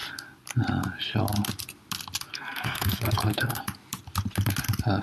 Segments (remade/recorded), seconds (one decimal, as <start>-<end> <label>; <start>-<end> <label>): 0.0-2.3 recorded; 2.3-3.6 remade; 3.6-5.0 recorded